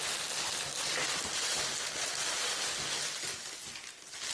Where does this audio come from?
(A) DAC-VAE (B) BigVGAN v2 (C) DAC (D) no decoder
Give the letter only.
D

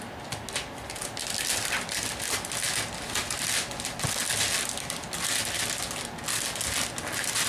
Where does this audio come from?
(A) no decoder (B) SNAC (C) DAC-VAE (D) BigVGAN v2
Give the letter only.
A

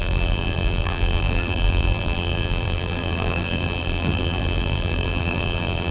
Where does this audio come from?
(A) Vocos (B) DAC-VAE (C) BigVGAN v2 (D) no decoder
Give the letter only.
C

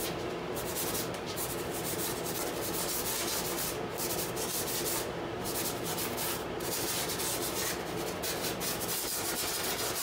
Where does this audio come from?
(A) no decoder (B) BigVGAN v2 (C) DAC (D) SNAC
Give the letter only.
A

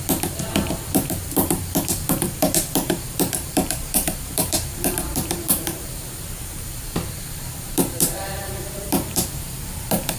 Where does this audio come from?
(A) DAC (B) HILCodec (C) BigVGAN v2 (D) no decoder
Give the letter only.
C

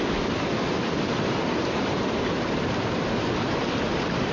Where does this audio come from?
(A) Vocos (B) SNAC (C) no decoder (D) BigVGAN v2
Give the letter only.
D